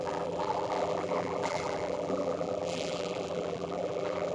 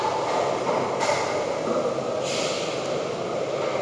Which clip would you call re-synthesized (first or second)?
first